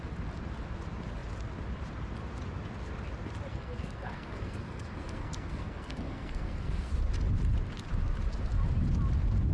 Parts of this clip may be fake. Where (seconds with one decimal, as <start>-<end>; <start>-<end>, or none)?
3.5-6.9